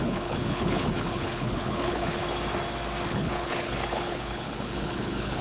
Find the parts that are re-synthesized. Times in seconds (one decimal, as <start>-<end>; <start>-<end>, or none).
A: 0.0-2.2; 3.1-5.4